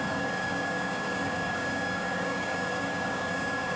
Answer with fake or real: fake